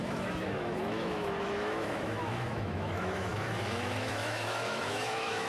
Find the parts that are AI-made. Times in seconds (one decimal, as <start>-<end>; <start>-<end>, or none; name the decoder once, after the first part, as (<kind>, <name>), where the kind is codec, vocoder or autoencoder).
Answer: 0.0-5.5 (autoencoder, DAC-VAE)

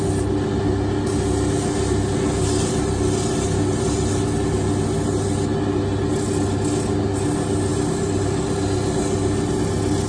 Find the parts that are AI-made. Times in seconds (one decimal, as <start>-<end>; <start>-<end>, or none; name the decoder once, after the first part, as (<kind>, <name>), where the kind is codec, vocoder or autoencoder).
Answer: none

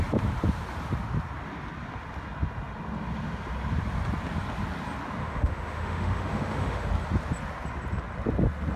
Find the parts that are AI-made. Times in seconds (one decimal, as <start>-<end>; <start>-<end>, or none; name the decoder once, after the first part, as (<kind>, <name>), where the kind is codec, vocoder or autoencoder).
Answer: 5.2-6.9 (autoencoder, DAC-VAE)